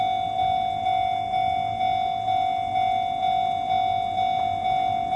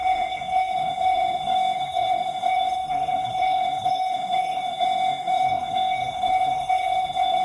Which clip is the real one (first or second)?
first